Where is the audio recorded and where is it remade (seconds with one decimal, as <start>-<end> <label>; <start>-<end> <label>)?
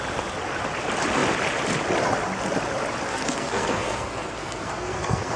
0.0-3.1 recorded; 3.1-5.4 remade